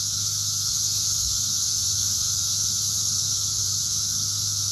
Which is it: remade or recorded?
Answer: remade